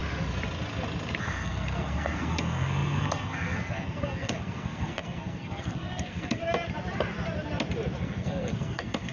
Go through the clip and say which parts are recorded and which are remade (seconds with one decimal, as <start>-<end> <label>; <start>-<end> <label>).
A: 0.0-1.2 recorded; 1.2-6.4 remade; 6.4-8.0 recorded; 8.0-9.1 remade

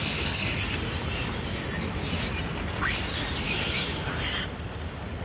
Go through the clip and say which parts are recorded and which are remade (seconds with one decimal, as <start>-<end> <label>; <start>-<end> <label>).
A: 0.0-0.5 remade; 0.5-5.2 recorded

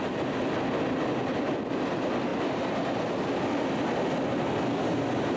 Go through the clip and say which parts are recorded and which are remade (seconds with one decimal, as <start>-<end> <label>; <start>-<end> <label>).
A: 0.0-5.4 recorded

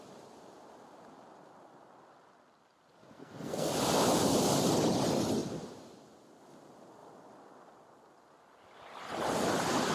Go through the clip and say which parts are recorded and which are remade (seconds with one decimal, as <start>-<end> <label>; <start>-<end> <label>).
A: 0.0-3.0 recorded; 3.0-3.7 remade; 3.7-9.9 recorded

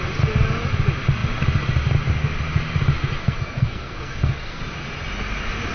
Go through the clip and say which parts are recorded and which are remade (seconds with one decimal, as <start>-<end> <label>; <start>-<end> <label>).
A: 0.0-3.2 recorded; 3.2-4.6 remade; 4.6-5.7 recorded

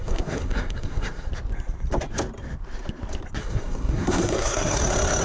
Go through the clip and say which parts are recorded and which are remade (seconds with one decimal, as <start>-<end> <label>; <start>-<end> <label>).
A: 0.0-1.3 remade; 1.3-3.4 recorded; 3.4-4.8 remade; 4.8-5.2 recorded

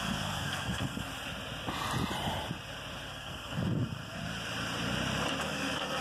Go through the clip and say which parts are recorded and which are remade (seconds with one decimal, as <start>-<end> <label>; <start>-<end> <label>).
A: 0.0-1.1 remade; 1.1-3.1 recorded; 3.1-4.2 remade; 4.2-5.4 recorded; 5.4-6.0 remade

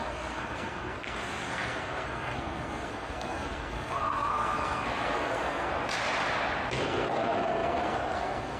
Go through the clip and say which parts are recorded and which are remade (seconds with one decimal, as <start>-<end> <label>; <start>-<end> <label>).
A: 0.0-5.7 remade; 5.7-6.7 recorded; 6.7-8.6 remade